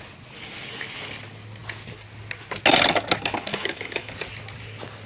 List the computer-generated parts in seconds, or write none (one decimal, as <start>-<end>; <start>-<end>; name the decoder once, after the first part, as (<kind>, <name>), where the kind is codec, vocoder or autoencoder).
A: 3.5-4.1 (autoencoder, DAC-VAE)